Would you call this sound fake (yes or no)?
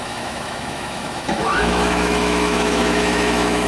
yes